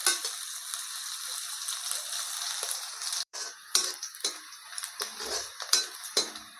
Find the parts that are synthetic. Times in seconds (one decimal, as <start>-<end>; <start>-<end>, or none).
1.5-6.6